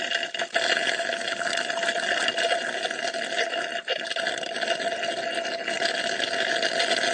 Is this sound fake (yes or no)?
no